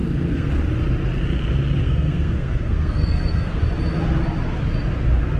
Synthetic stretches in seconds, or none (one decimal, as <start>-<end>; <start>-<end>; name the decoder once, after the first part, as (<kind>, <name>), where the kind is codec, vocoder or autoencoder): 0.0-0.5 (codec, SNAC); 1.8-3.6